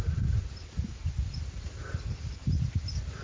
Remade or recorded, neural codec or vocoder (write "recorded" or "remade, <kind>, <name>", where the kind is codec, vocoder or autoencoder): recorded